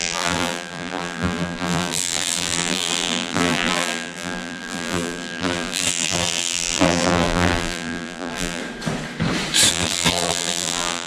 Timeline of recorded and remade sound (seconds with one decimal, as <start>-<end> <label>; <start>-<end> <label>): 0.0-8.6 remade; 8.6-9.7 recorded; 9.7-11.1 remade